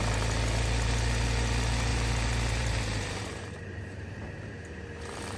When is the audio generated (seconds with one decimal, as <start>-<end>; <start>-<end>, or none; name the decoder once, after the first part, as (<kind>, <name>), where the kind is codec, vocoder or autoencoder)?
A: 1.9-4.5 (vocoder, BigVGAN v2)